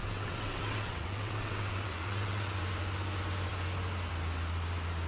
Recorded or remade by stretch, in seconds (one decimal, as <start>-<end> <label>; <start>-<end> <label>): 0.0-2.6 remade; 2.6-5.1 recorded